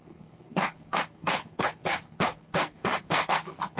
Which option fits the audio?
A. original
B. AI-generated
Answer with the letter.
B